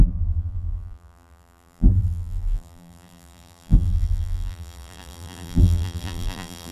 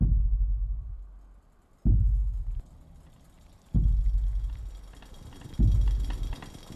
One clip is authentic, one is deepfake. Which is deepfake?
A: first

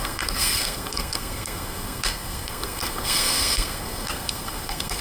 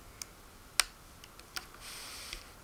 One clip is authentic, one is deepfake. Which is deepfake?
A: first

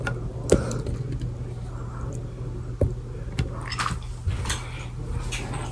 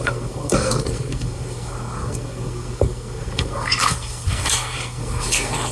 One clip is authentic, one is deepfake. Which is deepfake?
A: second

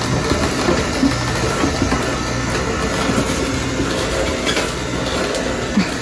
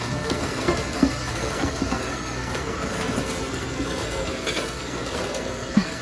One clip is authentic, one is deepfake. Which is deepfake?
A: second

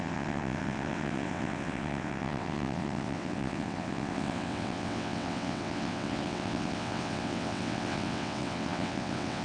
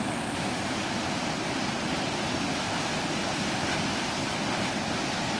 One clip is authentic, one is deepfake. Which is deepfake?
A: first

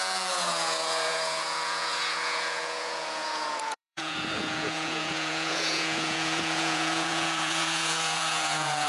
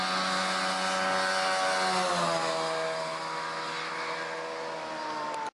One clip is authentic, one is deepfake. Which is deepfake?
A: first